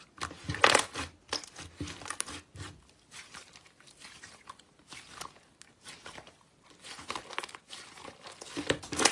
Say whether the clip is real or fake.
real